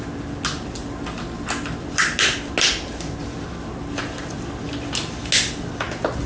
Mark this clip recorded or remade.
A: recorded